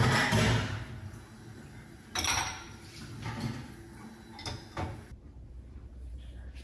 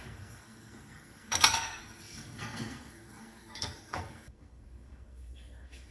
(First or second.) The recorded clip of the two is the first